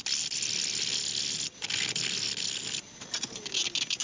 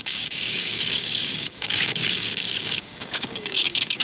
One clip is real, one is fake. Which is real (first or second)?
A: first